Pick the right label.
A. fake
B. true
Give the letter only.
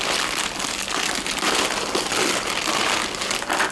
B